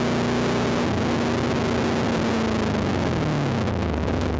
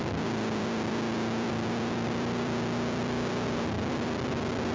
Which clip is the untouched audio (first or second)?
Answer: first